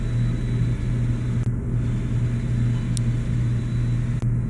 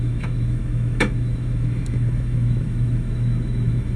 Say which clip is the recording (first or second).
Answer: first